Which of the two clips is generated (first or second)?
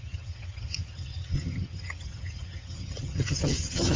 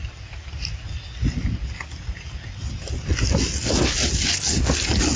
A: first